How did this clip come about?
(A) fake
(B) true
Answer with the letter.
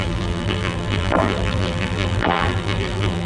A